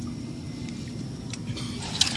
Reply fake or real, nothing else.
real